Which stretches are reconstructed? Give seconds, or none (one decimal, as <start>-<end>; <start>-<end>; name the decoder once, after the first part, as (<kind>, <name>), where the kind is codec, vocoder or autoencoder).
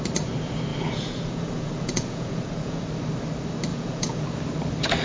0.7-2.8 (vocoder, Vocos); 3.7-4.2